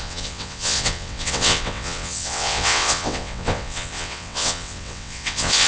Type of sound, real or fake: fake